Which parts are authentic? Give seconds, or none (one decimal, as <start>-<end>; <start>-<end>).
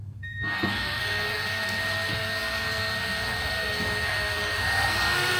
none